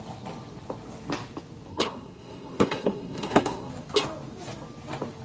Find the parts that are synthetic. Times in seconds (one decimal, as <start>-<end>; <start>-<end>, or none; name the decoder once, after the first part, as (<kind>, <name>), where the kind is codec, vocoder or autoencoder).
1.7-3.7 (codec, SNAC)